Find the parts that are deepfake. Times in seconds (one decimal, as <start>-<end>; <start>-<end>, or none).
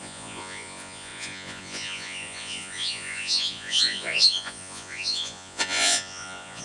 0.0-6.6